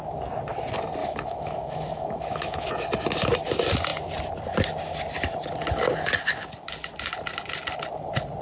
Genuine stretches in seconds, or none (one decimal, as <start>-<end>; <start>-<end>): 0.0-1.0; 2.7-8.4